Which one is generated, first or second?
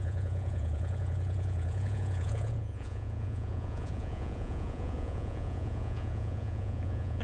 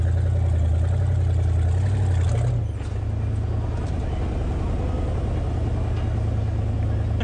first